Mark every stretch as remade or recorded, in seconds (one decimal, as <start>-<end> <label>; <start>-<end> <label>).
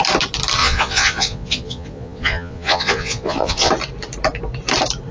0.0-0.6 recorded; 0.6-3.7 remade; 3.7-5.1 recorded